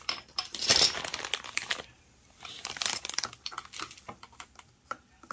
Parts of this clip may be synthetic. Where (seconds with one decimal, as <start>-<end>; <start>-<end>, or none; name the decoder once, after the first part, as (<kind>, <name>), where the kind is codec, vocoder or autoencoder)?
0.0-5.3 (vocoder, BigVGAN v2)